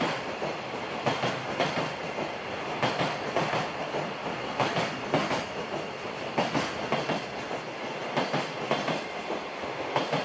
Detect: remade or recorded recorded